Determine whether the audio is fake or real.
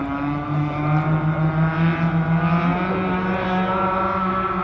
real